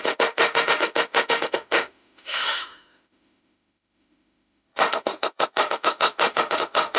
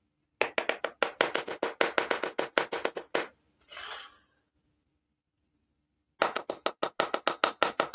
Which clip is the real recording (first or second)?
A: second